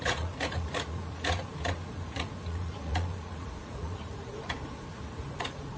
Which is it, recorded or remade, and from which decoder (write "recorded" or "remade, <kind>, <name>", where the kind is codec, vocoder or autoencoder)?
remade, vocoder, Vocos